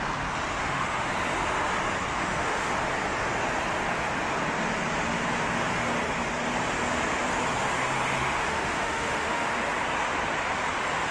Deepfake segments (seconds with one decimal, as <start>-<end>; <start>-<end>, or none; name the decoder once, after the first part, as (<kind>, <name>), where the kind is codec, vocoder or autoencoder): 0.6-1.1 (autoencoder, DAC-VAE); 2.1-2.7; 8.2-9.6